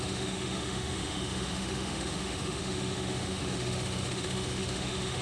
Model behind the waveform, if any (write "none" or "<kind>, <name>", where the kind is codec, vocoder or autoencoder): autoencoder, DAC-VAE